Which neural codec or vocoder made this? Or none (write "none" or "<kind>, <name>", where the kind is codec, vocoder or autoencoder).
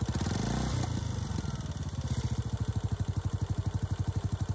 none